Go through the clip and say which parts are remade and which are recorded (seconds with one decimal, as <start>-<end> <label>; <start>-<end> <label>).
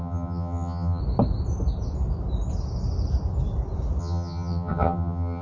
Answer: 0.0-1.0 remade; 1.0-4.0 recorded; 4.0-5.4 remade